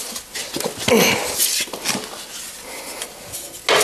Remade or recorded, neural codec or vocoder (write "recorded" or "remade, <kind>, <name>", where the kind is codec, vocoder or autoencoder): recorded